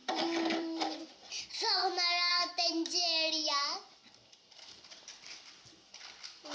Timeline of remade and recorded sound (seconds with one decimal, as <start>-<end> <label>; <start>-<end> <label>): 0.0-1.4 remade; 1.4-2.3 recorded; 2.3-3.0 remade; 3.0-3.4 recorded; 3.4-4.8 remade; 4.8-6.5 recorded

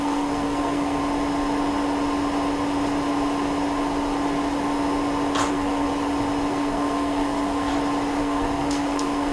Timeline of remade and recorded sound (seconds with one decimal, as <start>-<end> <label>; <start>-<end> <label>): 0.0-1.0 remade; 1.0-5.5 recorded; 5.5-5.9 remade; 5.9-6.5 recorded; 6.5-7.7 remade; 7.7-8.2 recorded; 8.2-9.3 remade

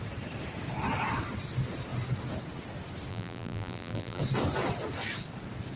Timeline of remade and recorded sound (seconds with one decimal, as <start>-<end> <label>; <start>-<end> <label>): 0.0-3.1 recorded; 3.1-4.2 remade; 4.2-5.8 recorded

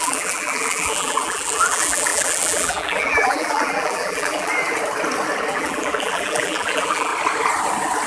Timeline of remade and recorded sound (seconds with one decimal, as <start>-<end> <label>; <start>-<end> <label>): 0.0-4.5 remade; 4.5-5.5 recorded; 5.5-7.1 remade; 7.1-8.1 recorded

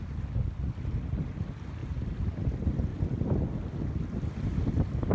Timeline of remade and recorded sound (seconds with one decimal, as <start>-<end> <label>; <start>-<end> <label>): 0.0-1.8 recorded; 1.8-2.4 remade; 2.4-5.1 recorded

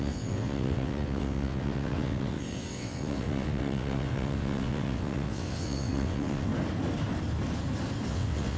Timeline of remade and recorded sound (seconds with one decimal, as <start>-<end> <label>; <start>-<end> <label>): 0.0-6.5 remade; 6.5-8.1 recorded; 8.1-8.6 remade